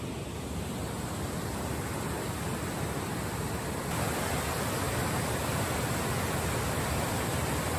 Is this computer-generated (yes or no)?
no